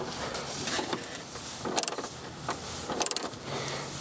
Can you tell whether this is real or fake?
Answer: real